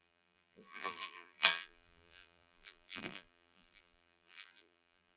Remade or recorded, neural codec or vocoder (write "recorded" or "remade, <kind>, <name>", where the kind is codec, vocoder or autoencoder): remade, vocoder, BigVGAN v2